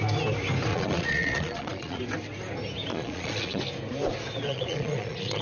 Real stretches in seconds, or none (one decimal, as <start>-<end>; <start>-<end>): 0.0-0.7; 2.0-2.9; 3.6-4.5